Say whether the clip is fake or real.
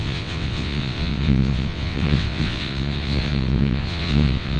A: fake